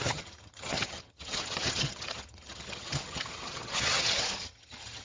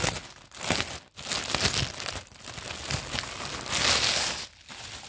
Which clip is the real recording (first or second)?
second